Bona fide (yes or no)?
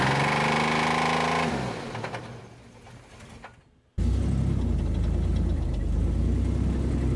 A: yes